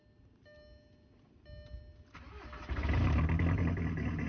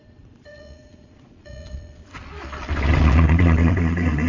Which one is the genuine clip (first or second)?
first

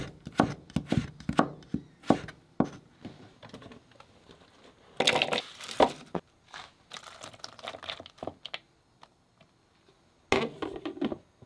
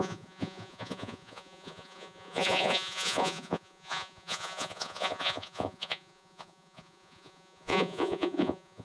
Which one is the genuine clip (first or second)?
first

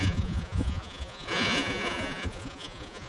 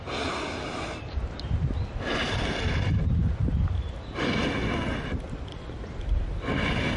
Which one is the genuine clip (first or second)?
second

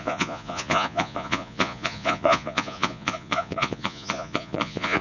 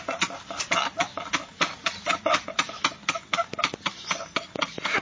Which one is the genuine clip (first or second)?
second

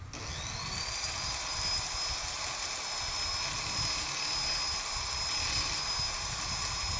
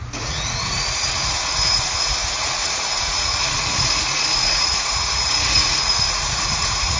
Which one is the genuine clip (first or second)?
first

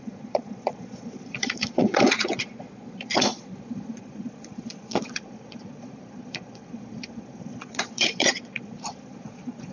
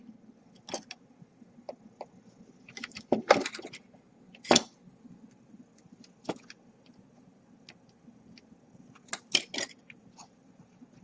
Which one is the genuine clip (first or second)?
second